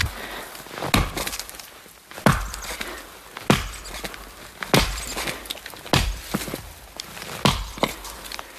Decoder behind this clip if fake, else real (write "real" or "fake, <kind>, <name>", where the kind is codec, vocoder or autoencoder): real